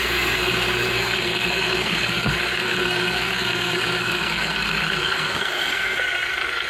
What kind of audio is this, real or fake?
fake